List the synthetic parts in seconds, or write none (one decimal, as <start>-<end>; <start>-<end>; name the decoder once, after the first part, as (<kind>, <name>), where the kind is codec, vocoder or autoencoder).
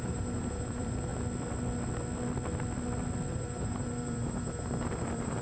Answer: 0.0-1.1 (vocoder, BigVGAN v2); 3.3-5.4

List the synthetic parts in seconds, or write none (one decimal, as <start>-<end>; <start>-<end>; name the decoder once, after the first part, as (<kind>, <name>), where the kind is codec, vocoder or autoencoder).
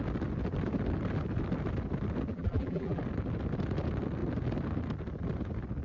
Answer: 2.3-3.0 (vocoder, BigVGAN v2)